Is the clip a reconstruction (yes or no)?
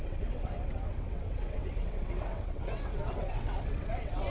yes